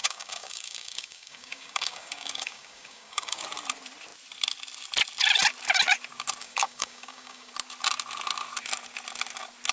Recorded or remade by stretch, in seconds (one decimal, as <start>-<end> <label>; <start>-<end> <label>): 0.0-3.4 remade; 3.4-6.4 recorded; 6.4-7.5 remade; 7.5-9.7 recorded